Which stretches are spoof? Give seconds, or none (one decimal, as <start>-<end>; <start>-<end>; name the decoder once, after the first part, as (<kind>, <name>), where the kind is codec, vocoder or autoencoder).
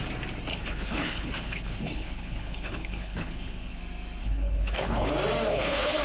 0.5-3.8 (codec, HILCodec); 4.2-5.1; 5.5-6.0